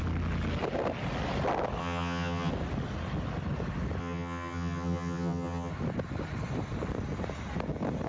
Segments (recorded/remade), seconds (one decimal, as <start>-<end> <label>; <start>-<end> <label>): 0.0-1.8 recorded; 1.8-2.5 remade; 2.5-4.0 recorded; 4.0-5.7 remade; 5.7-8.1 recorded